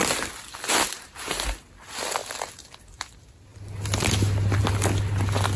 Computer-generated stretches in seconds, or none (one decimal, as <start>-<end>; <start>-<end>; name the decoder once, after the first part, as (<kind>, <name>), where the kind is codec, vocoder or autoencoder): none